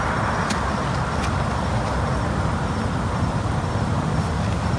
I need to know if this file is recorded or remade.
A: recorded